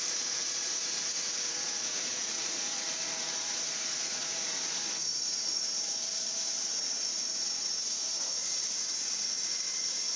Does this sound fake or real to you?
fake